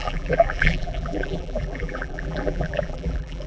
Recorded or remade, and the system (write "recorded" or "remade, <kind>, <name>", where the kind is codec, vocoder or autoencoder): remade, vocoder, BigVGAN v2